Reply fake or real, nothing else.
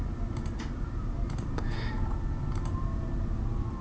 real